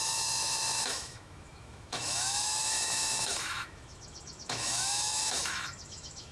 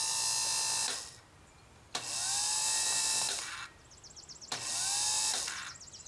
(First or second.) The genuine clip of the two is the second